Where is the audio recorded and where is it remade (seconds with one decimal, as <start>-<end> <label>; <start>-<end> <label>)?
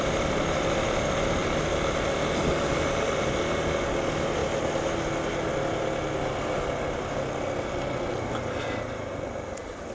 0.0-9.9 recorded